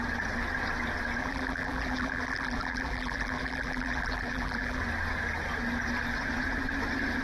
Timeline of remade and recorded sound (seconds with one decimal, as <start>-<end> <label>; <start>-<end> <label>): 0.0-1.2 recorded; 1.2-4.8 remade; 4.8-7.2 recorded